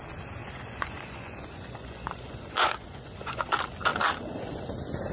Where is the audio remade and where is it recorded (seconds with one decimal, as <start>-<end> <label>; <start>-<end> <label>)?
0.0-0.4 recorded; 0.4-3.5 remade; 3.5-5.1 recorded